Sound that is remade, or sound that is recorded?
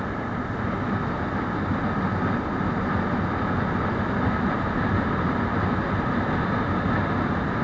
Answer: recorded